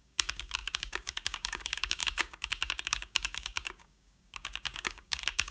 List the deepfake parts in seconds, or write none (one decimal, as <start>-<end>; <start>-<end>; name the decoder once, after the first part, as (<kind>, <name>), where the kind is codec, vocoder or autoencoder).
0.0-5.5 (codec, DAC)